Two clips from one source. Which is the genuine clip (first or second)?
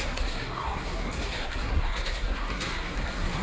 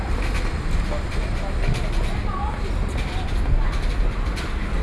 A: second